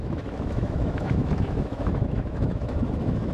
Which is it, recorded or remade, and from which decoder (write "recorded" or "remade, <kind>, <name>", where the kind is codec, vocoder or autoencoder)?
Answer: remade, autoencoder, DAC-VAE